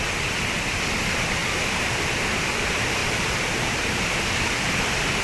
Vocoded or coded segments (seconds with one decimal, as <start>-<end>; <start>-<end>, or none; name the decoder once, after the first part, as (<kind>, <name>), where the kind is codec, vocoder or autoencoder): 1.4-1.9 (vocoder, BigVGAN v2); 3.0-4.2